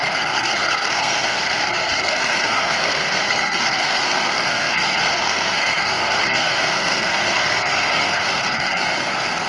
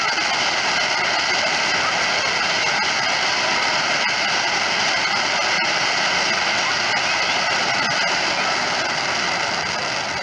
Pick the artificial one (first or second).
first